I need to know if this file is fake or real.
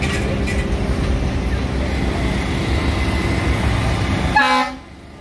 real